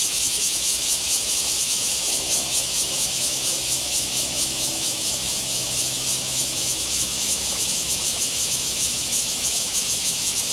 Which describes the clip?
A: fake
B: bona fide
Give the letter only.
A